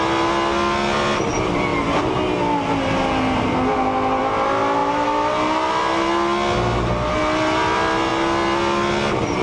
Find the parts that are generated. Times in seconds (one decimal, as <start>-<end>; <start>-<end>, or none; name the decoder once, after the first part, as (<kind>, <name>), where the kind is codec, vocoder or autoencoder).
none